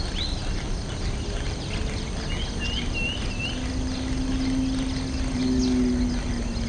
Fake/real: real